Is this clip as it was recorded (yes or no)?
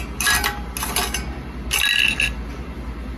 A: yes